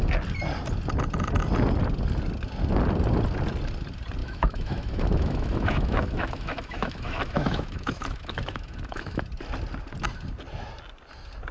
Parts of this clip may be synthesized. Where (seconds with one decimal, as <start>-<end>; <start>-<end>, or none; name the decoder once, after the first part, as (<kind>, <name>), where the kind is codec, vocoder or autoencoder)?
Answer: 4.2-9.2 (autoencoder, DAC-VAE)